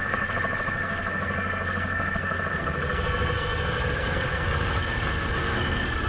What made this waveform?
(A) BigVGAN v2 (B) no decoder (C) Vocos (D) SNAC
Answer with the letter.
D